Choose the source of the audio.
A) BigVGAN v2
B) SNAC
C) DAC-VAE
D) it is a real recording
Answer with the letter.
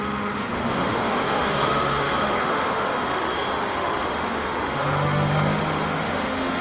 C